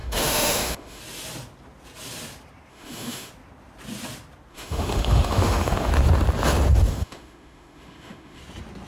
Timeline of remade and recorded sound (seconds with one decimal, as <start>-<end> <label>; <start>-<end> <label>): 0.0-1.0 remade; 1.0-2.7 recorded; 2.7-3.3 remade; 3.3-4.5 recorded; 4.5-5.9 remade; 5.9-6.9 recorded; 6.9-8.4 remade; 8.4-8.9 recorded